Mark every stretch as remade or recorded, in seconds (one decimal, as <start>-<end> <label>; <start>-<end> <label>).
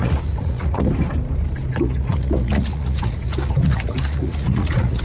0.0-0.9 remade; 0.9-1.7 recorded; 1.7-5.0 remade